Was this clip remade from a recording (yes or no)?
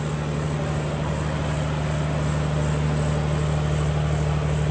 no